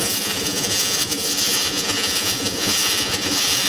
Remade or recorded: remade